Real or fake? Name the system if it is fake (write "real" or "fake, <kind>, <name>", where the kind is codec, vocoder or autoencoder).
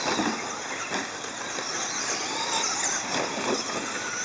real